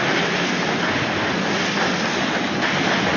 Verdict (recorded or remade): recorded